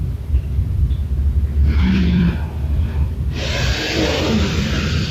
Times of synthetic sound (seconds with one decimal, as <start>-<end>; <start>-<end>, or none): 0.0-1.0; 1.8-5.1